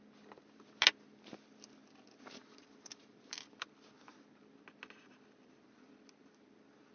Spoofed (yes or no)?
no